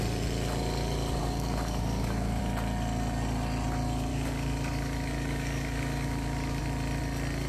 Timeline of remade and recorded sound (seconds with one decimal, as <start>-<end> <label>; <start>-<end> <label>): 0.0-1.2 recorded; 1.2-2.4 remade; 2.4-4.1 recorded; 4.1-6.6 remade; 6.6-7.5 recorded